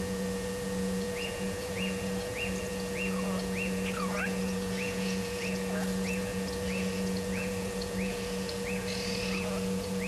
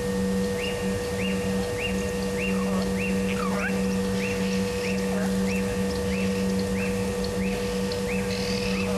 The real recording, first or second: second